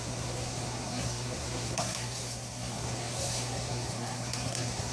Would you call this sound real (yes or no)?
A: no